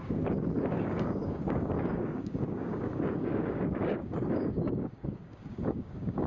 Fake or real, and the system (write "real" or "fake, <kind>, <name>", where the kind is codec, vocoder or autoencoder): fake, codec, DAC